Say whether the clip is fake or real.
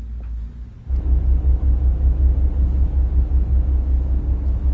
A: real